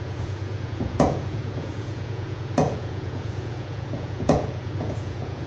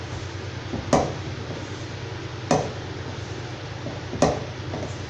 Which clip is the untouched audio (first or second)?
second